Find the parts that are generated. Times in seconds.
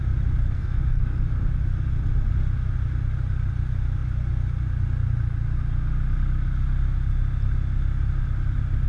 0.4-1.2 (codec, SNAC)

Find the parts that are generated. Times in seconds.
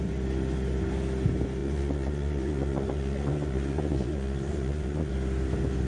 1.6-5.1 (vocoder, Vocos)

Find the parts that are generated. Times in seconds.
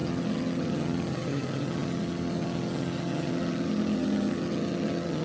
0.0-5.2 (vocoder, HiFi-GAN)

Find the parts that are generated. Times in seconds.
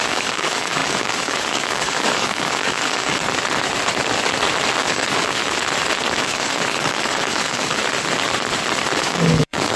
0.0-3.2 (codec, DAC); 4.8-5.4; 6.1-7.8; 9.0-9.8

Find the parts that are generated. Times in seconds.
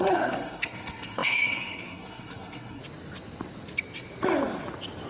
0.0-2.8 (codec, SNAC)